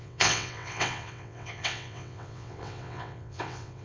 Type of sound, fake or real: fake